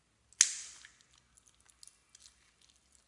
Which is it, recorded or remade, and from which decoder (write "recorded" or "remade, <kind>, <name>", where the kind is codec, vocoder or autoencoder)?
recorded